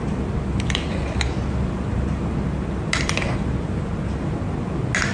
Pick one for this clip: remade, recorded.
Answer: recorded